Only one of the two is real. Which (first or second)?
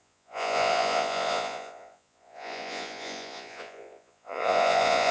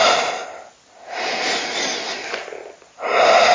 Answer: second